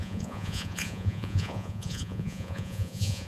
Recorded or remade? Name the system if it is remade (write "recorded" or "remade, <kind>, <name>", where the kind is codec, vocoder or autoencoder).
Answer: remade, vocoder, Vocos